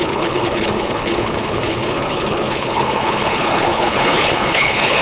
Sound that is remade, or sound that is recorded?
remade